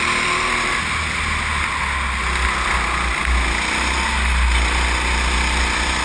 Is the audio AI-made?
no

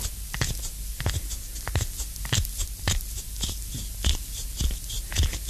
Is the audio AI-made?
no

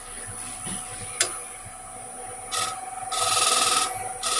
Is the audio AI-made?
no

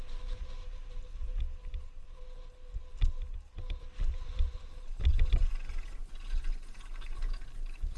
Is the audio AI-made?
no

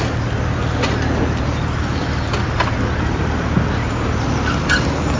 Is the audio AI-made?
no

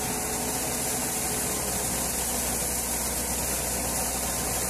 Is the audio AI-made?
no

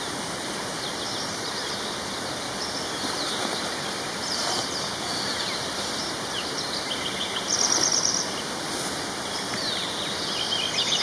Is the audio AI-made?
no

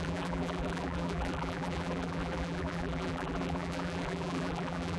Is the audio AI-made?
yes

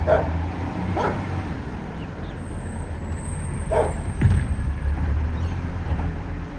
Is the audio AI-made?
yes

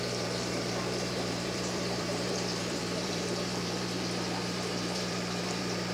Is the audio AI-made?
yes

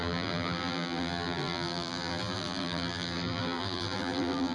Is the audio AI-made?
yes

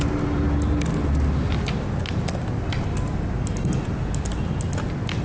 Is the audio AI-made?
no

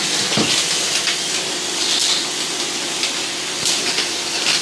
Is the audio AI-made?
no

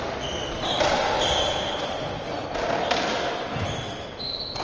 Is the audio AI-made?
no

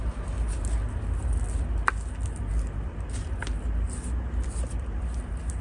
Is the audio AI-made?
no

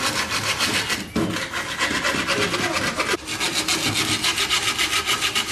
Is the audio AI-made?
no